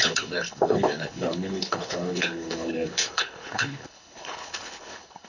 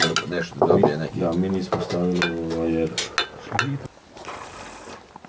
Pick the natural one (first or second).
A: second